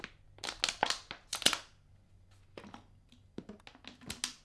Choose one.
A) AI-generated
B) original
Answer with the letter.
B